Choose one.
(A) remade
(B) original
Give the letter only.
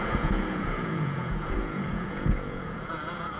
A